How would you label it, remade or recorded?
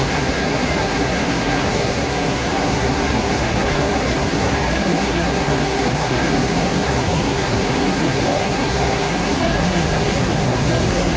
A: remade